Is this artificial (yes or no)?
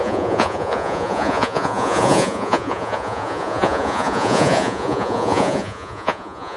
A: yes